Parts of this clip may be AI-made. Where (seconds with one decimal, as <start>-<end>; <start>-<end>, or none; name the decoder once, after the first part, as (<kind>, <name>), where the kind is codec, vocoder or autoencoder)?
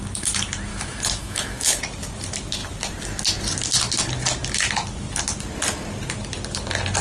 0.7-1.8 (autoencoder, DAC-VAE)